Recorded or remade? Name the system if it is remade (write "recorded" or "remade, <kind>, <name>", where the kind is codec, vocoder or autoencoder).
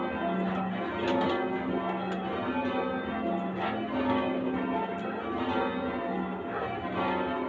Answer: recorded